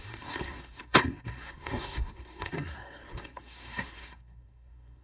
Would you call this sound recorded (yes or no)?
no